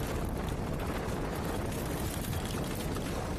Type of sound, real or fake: real